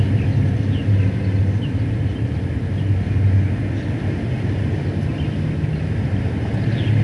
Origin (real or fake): real